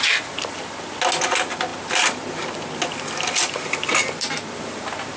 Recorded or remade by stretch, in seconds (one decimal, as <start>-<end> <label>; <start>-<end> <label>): 0.0-5.2 recorded